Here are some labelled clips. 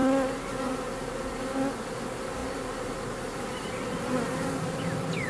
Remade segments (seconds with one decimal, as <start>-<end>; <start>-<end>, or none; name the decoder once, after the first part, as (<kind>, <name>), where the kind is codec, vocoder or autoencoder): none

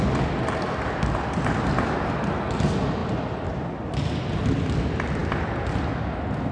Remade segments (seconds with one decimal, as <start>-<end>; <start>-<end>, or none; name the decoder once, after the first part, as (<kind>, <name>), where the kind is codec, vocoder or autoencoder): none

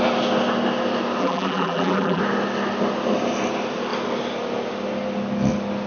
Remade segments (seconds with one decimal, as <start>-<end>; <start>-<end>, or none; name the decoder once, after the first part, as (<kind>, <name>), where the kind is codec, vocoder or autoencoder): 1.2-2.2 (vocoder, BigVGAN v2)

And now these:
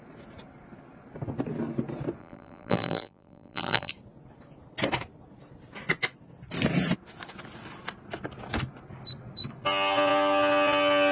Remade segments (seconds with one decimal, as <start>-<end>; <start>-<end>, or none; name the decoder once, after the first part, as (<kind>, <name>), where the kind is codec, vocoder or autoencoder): 2.2-3.9 (vocoder, BigVGAN v2)

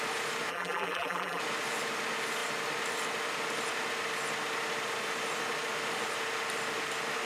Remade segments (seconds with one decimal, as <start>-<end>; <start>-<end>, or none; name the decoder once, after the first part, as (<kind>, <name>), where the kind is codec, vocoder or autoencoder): 0.5-1.4 (vocoder, BigVGAN v2)

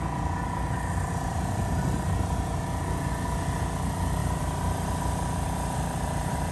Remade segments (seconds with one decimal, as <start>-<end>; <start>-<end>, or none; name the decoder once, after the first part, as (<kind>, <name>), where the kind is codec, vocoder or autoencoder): 4.2-6.5 (vocoder, BigVGAN v2)

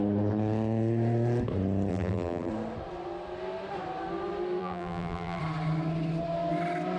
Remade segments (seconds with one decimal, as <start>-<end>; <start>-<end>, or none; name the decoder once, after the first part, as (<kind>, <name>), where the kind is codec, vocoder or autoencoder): 1.9-2.5 (vocoder, BigVGAN v2); 4.6-5.4